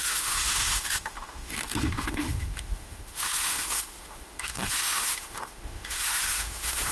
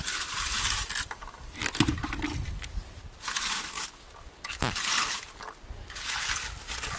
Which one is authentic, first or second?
second